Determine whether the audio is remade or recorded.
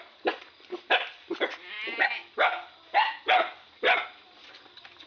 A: recorded